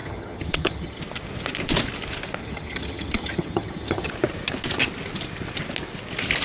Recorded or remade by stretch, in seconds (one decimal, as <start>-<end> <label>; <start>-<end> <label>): 0.0-1.0 remade; 1.0-2.4 recorded; 2.4-4.1 remade; 4.1-6.4 recorded